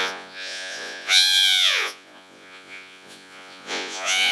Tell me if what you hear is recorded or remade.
remade